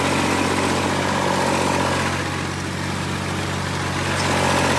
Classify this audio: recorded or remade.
recorded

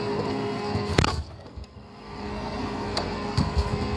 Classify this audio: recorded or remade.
remade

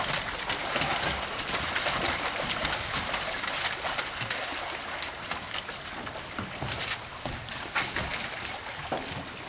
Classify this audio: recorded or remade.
recorded